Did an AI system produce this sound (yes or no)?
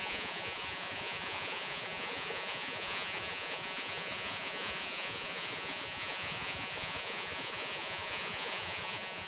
yes